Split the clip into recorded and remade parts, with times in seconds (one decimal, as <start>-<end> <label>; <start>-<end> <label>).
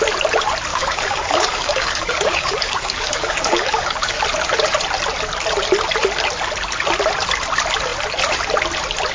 0.0-0.7 recorded; 0.7-4.2 remade; 4.2-9.1 recorded